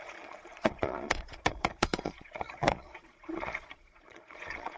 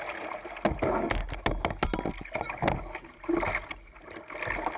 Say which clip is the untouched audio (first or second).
second